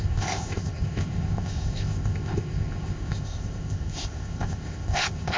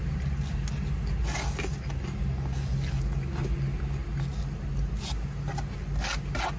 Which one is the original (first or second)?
second